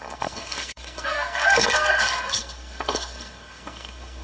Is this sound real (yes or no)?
no